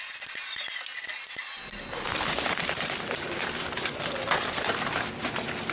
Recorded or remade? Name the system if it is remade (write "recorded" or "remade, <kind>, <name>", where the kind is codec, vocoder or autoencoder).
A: recorded